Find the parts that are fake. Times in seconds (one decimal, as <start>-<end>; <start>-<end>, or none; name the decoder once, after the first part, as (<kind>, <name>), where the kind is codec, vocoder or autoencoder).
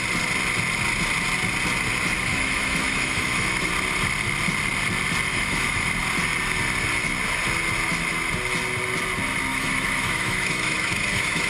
2.3-3.7 (autoencoder, DAC-VAE); 5.3-5.9; 9.5-11.5